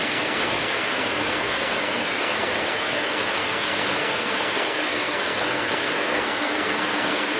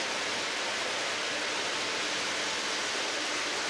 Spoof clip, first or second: first